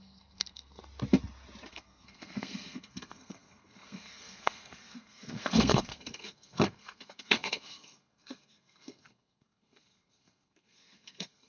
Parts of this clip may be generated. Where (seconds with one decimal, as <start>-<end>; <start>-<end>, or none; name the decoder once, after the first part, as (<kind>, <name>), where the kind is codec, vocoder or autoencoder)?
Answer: 0.0-0.8 (codec, SNAC); 1.7-11.5